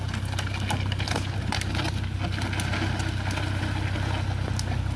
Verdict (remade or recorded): recorded